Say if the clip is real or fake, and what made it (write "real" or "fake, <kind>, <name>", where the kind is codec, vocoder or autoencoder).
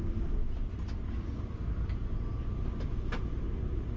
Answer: real